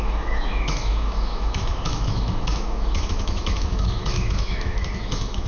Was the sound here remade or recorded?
remade